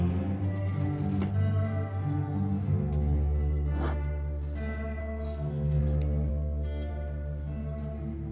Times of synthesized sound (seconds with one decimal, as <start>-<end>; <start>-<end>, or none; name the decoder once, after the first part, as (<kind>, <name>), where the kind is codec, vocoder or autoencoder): 5.0-5.8 (codec, SNAC); 6.3-6.9